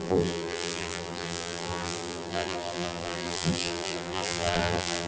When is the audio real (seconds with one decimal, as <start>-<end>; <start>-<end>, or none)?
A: none